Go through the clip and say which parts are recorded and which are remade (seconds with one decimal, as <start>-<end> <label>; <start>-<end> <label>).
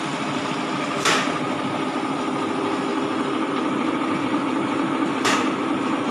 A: 0.0-6.1 remade